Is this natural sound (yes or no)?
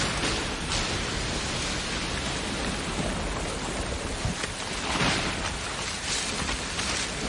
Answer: yes